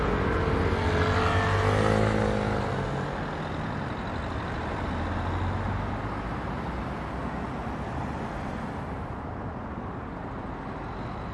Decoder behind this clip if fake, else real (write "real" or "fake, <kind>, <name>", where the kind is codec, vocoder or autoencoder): real